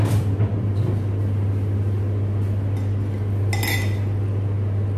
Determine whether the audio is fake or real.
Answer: real